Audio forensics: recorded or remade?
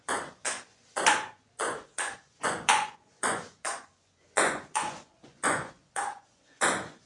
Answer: remade